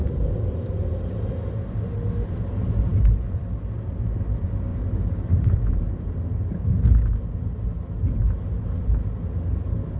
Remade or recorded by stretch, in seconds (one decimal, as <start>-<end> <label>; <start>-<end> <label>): 0.0-1.3 remade; 1.3-4.7 recorded; 4.7-6.2 remade; 6.2-10.0 recorded